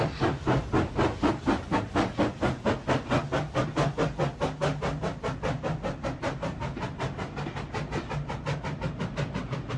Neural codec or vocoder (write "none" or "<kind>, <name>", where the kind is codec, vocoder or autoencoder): none